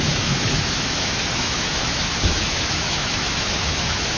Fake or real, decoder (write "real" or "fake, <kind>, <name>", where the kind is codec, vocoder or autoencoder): fake, autoencoder, DAC-VAE